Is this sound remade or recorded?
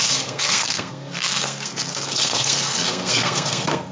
remade